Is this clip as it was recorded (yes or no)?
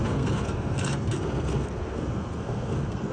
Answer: no